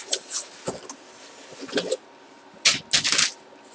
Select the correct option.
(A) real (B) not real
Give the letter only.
A